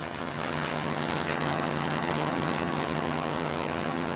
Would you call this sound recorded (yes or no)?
no